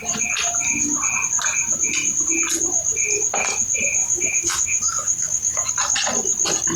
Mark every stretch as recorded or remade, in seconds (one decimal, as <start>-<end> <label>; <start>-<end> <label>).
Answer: 0.0-4.0 recorded; 4.0-5.7 remade; 5.7-6.8 recorded